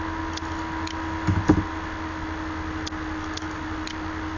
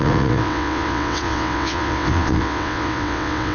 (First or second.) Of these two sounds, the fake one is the second